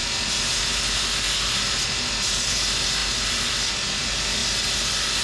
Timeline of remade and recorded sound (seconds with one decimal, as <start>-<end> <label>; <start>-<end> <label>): 0.0-5.2 recorded